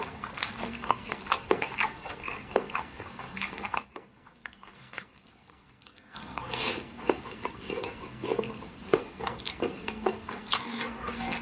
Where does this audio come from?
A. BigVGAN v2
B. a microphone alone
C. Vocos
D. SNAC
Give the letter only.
D